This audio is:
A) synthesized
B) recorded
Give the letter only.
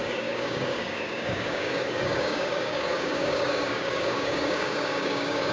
A